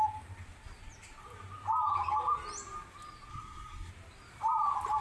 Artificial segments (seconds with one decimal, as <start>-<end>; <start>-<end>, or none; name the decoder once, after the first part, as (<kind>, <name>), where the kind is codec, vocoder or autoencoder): 3.3-3.9 (codec, SNAC)